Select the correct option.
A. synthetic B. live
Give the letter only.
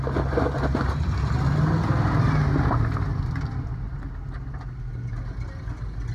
B